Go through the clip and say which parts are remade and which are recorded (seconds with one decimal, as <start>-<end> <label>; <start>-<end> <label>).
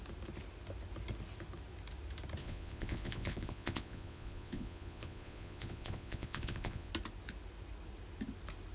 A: 0.0-2.4 recorded; 2.4-6.9 remade; 6.9-8.7 recorded